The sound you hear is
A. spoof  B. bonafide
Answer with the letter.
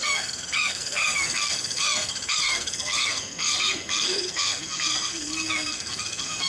A